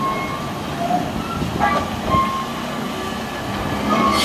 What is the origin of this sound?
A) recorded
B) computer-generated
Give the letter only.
A